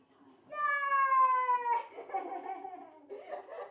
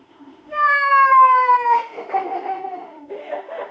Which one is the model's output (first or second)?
second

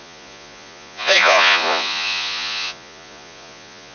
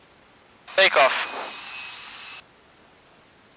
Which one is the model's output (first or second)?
first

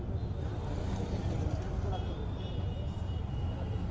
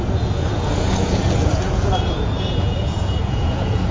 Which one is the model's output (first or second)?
second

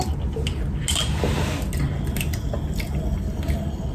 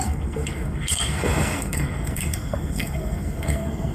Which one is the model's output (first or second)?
second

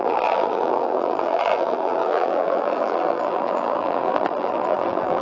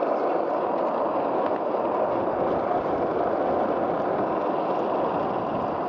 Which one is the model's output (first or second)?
first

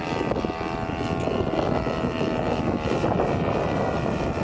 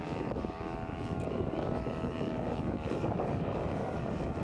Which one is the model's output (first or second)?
second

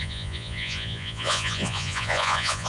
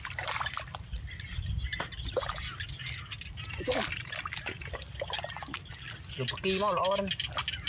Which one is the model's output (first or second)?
first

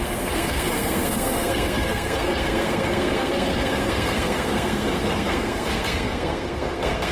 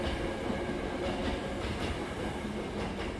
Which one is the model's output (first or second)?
first